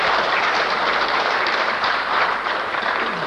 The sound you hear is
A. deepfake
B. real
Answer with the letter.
A